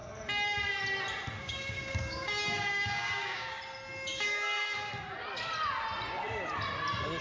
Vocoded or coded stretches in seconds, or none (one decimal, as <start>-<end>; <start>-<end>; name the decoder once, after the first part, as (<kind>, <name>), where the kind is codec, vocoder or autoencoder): 1.4-3.6 (codec, DAC); 4.1-4.9